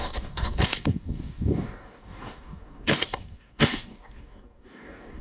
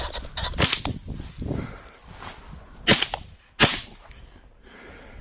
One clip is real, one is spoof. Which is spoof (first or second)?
first